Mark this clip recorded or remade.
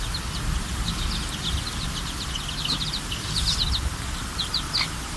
recorded